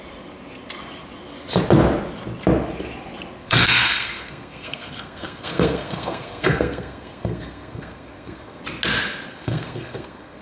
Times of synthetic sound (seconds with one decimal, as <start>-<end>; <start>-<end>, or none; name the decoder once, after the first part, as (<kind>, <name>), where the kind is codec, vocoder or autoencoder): 3.4-8.6 (codec, SNAC); 9.3-10.4

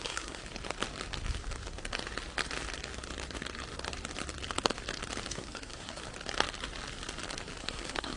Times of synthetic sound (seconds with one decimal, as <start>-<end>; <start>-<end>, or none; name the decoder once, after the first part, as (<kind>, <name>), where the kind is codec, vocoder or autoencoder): 0.0-0.4 (codec, SNAC); 5.3-6.0; 7.6-8.2